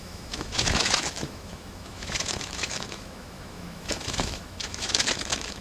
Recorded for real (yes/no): no